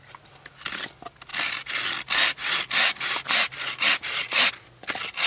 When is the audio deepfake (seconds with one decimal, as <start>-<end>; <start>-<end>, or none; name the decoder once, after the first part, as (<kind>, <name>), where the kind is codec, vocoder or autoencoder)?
none